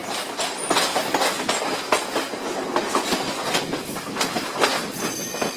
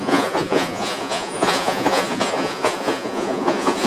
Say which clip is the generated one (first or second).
second